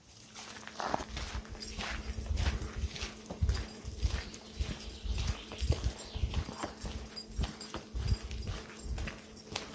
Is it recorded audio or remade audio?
recorded